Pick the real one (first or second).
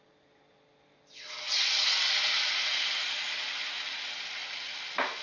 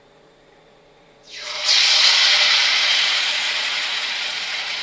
first